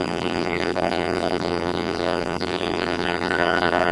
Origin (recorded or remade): remade